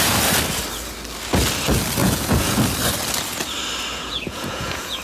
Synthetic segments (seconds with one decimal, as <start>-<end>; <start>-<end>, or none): 2.0-2.6; 3.9-5.0